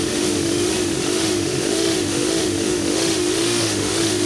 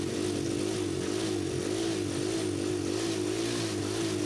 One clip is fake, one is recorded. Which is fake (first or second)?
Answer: first